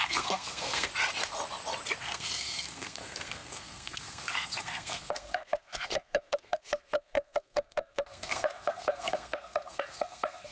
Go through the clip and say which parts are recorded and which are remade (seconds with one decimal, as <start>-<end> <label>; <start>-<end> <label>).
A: 0.0-0.9 remade; 0.9-2.0 recorded; 2.0-10.5 remade